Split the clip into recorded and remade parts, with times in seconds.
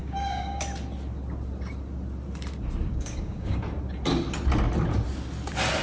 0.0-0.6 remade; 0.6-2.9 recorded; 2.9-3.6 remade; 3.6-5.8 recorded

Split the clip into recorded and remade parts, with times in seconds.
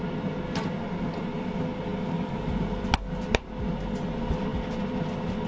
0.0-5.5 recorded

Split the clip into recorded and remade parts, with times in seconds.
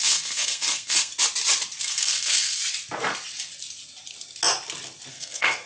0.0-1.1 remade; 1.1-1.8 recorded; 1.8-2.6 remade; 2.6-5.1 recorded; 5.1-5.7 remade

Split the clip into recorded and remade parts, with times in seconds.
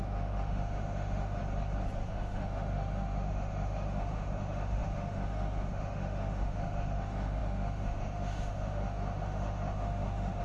0.0-1.4 remade; 1.4-2.1 recorded; 2.1-10.4 remade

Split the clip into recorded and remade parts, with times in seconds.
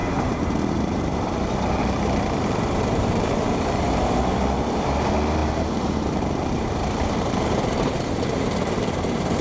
0.0-4.2 remade; 4.2-5.4 recorded; 5.4-9.4 remade